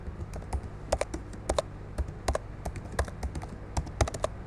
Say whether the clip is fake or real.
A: real